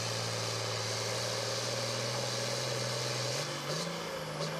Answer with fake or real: real